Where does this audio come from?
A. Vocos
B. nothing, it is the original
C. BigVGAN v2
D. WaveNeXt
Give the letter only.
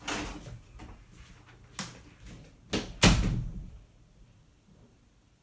B